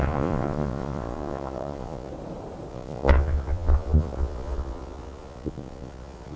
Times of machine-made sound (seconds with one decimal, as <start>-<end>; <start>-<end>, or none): 0.0-2.1; 2.7-6.4